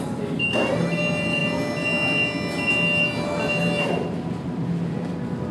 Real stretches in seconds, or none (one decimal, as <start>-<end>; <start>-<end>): 0.0-5.5